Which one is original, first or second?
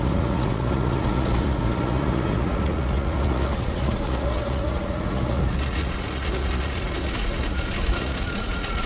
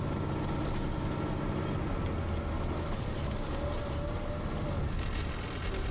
second